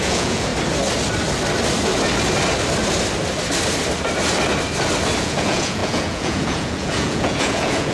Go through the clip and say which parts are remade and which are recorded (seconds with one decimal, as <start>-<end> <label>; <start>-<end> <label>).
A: 0.0-0.5 remade; 0.5-5.2 recorded; 5.2-7.9 remade